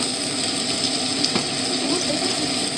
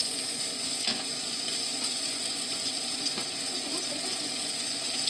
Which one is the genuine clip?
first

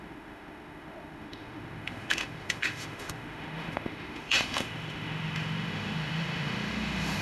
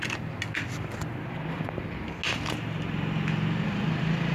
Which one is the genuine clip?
second